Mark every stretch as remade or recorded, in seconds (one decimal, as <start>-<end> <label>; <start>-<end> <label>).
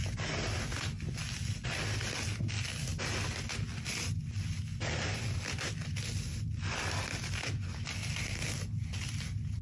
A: 0.0-9.6 recorded